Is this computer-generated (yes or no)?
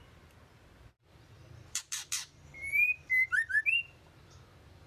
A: yes